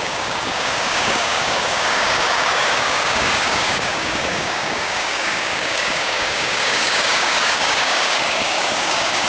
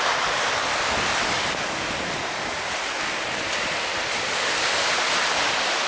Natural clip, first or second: second